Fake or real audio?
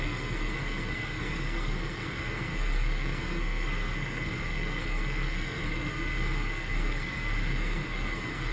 fake